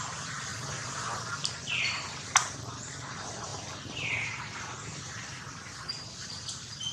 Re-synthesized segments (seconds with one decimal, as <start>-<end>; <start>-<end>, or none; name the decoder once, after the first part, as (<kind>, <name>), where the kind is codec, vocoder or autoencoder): 0.5-2.0 (vocoder, BigVGAN v2); 3.5-5.8